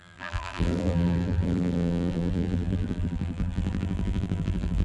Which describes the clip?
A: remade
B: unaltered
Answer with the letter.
A